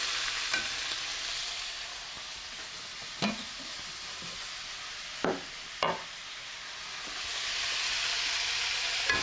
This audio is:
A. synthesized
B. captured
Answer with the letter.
B